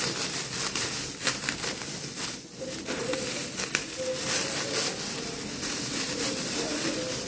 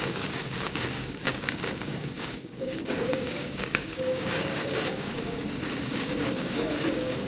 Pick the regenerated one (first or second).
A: second